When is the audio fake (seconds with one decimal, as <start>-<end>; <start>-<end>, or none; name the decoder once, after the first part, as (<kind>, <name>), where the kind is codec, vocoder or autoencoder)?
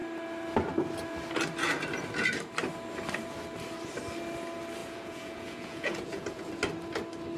4.8-6.5 (vocoder, Vocos)